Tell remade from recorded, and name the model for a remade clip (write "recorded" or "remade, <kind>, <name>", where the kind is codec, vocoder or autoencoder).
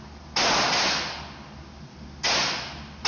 recorded